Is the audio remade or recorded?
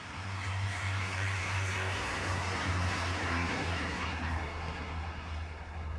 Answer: remade